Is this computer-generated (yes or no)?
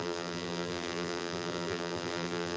yes